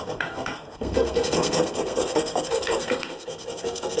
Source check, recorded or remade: remade